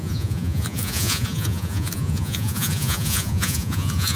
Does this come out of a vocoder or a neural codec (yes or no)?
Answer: yes